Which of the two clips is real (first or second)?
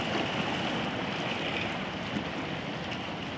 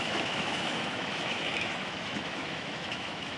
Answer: first